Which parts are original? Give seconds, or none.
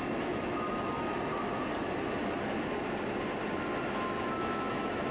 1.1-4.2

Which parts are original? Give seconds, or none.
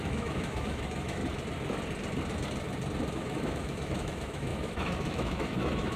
1.2-3.1